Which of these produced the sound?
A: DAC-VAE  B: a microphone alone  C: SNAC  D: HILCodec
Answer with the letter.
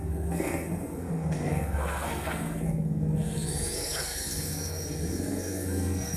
C